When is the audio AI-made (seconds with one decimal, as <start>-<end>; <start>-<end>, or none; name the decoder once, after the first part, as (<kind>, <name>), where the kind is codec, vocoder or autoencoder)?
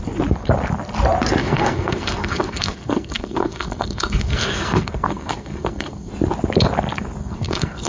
1.4-6.1 (codec, SNAC); 7.2-7.9